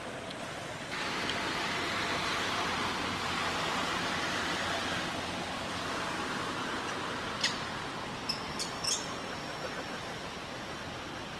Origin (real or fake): real